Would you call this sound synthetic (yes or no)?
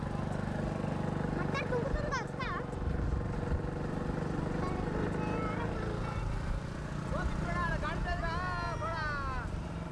no